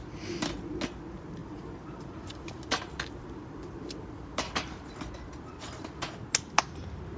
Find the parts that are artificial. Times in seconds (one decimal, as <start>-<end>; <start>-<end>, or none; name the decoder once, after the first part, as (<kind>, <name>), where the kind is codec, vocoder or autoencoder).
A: 1.4-5.1 (vocoder, BigVGAN v2)